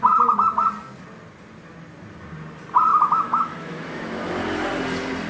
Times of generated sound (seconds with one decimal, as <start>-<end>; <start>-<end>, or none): 2.9-4.3